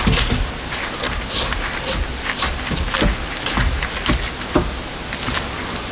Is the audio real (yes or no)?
yes